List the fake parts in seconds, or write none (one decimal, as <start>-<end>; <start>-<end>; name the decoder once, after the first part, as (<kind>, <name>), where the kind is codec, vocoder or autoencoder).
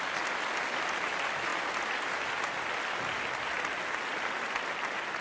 none